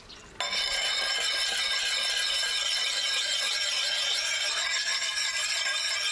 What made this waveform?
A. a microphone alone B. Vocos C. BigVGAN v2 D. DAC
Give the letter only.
A